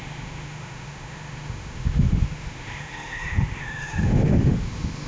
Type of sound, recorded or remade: remade